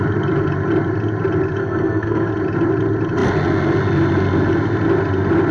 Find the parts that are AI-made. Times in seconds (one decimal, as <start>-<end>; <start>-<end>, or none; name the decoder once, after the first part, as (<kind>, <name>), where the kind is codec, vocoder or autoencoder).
1.6-2.3 (codec, SNAC)